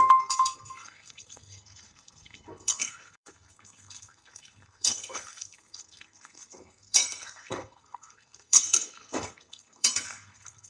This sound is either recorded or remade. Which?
remade